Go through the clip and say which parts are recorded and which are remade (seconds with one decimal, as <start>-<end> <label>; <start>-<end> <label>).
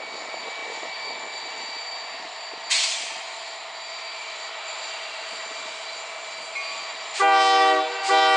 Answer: 0.0-0.6 recorded; 0.6-1.9 remade; 1.9-4.2 recorded; 4.2-6.0 remade; 6.0-8.4 recorded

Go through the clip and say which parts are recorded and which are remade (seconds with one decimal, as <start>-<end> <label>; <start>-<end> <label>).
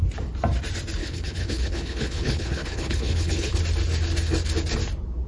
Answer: 0.0-1.0 recorded; 1.0-3.6 remade; 3.6-5.3 recorded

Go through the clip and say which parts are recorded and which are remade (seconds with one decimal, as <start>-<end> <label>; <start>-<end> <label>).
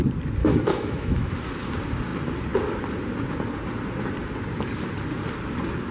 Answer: 0.0-0.4 recorded; 0.4-1.3 remade; 1.3-5.9 recorded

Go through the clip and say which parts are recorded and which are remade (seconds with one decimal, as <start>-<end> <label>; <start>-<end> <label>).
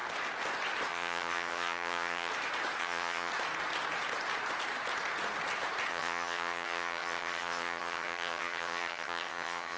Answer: 0.0-0.9 recorded; 0.9-2.3 remade; 2.3-2.8 recorded; 2.8-3.3 remade; 3.3-5.9 recorded; 5.9-9.8 remade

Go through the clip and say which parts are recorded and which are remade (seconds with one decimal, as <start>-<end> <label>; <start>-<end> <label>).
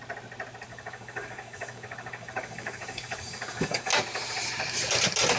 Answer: 0.0-0.7 recorded; 0.7-3.9 remade; 3.9-5.4 recorded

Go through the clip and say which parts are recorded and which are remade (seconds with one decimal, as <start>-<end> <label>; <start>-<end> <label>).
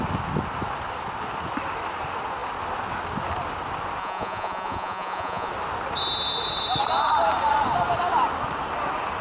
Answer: 0.0-4.0 recorded; 4.0-5.5 remade; 5.5-9.2 recorded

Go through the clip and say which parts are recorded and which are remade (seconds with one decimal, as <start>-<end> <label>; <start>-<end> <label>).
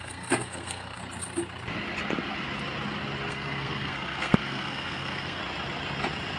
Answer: 0.0-1.0 remade; 1.0-3.3 recorded; 3.3-5.4 remade; 5.4-6.4 recorded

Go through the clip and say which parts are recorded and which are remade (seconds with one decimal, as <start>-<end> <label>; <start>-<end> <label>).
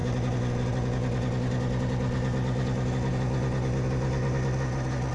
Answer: 0.0-5.1 recorded